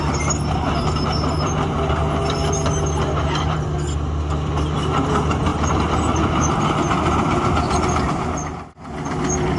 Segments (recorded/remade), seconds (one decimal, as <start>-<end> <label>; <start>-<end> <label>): 0.0-9.6 recorded